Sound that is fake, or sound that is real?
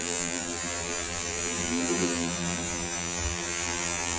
fake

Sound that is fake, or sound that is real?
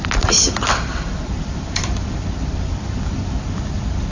fake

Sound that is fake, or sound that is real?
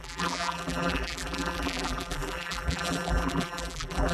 fake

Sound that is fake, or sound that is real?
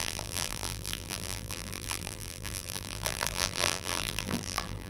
fake